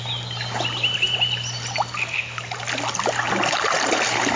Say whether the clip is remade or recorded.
recorded